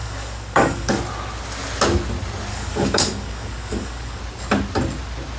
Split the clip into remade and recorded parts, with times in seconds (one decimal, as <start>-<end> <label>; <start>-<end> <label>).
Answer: 0.0-1.0 remade; 1.0-2.5 recorded; 2.5-4.2 remade; 4.2-5.4 recorded